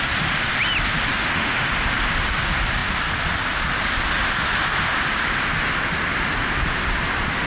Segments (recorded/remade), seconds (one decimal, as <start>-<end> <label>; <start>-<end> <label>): 0.0-1.1 recorded; 1.1-1.7 remade; 1.7-7.5 recorded

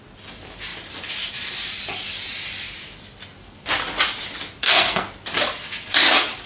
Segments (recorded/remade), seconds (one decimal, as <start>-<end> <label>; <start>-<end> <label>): 0.0-4.6 recorded; 4.6-5.1 remade; 5.1-6.5 recorded

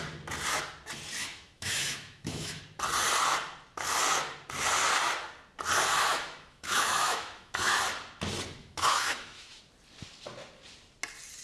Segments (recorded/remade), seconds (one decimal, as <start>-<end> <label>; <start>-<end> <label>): 0.0-1.2 recorded; 1.2-2.6 remade; 2.6-6.1 recorded; 6.1-7.8 remade; 7.8-8.6 recorded; 8.6-9.6 remade; 9.6-11.4 recorded

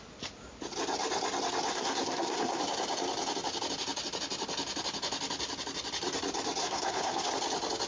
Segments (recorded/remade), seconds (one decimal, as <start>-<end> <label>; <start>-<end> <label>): 0.0-1.7 recorded; 1.7-2.6 remade; 2.6-6.6 recorded; 6.6-7.3 remade; 7.3-7.9 recorded

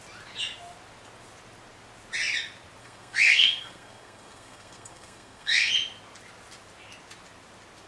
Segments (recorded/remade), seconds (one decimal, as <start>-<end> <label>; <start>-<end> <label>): 0.0-2.8 recorded; 2.8-5.7 remade; 5.7-7.9 recorded

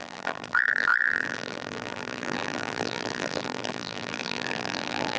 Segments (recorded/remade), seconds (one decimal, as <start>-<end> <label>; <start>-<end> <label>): 0.0-5.2 remade